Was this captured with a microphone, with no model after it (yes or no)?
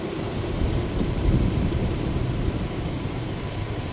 no